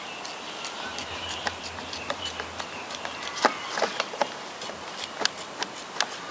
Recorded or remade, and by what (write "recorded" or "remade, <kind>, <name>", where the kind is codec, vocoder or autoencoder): recorded